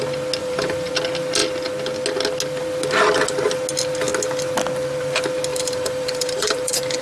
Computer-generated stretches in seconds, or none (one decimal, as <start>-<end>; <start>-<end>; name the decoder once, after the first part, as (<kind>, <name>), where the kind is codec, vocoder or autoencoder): 0.4-0.9 (vocoder, BigVGAN v2); 5.5-7.0